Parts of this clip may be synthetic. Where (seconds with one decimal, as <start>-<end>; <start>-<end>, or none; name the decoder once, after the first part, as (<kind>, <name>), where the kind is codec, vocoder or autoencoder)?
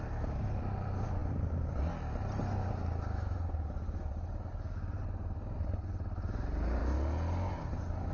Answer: none